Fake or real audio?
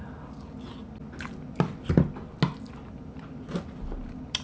real